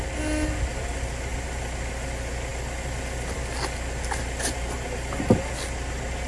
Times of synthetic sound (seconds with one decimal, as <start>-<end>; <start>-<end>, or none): none